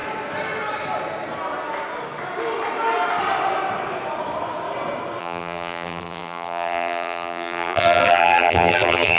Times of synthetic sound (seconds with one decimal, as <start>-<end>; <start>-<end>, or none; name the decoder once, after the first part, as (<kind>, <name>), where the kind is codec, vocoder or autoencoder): 5.2-9.2 (vocoder, BigVGAN v2)